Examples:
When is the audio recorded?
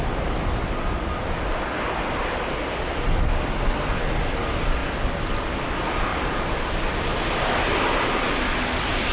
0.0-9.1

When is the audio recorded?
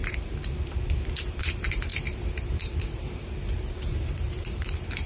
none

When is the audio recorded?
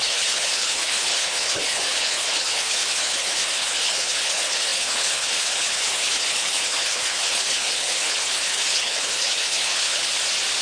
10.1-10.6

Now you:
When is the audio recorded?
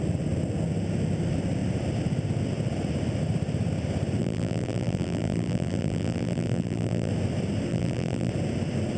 0.0-4.2; 7.1-7.7; 8.3-9.0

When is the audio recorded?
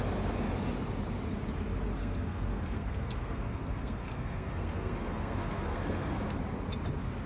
0.0-2.0; 6.2-7.3